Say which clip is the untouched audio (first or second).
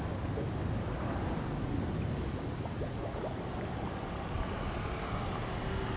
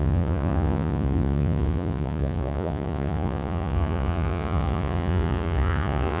first